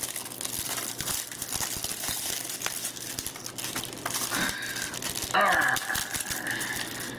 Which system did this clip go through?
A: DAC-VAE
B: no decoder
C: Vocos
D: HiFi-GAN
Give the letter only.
B